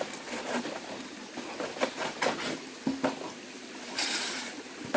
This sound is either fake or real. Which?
real